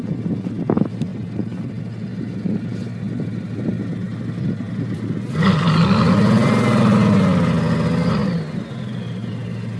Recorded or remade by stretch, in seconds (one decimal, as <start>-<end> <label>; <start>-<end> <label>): 0.0-9.8 recorded